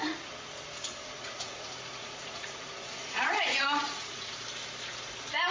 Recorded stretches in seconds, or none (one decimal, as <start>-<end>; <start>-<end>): 0.0-1.0; 4.3-5.5